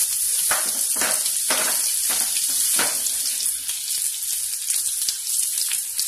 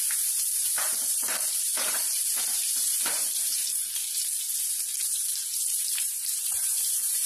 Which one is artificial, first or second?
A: second